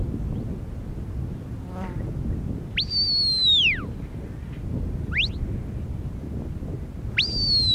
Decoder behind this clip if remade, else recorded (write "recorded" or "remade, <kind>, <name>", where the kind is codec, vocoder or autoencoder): recorded